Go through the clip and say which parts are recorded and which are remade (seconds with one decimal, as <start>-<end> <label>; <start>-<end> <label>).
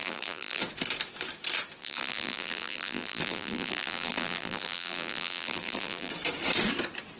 0.0-0.6 remade; 0.6-1.8 recorded; 1.8-6.1 remade; 6.1-7.2 recorded